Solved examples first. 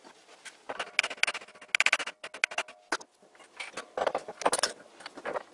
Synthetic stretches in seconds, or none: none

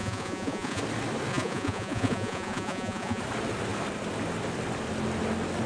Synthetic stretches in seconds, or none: 0.0-0.8 (vocoder, Vocos); 1.3-3.2

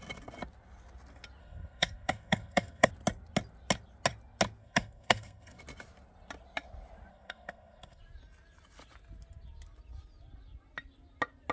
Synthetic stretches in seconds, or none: 1.4-2.9 (codec, SNAC); 4.6-5.6; 7.1-8.0

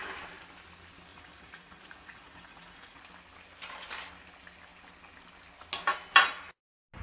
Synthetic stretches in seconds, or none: 1.1-3.0 (vocoder, Vocos)

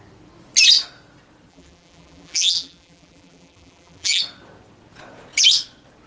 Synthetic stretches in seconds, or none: 1.5-4.2 (vocoder, BigVGAN v2)

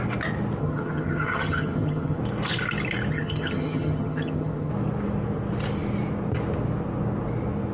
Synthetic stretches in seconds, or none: 0.6-2.2 (vocoder, HiFi-GAN); 3.1-4.7

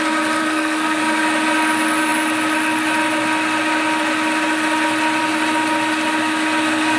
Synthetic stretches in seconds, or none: 0.4-1.0 (codec, SNAC)